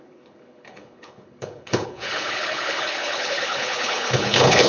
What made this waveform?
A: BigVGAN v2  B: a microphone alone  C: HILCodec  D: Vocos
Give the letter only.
C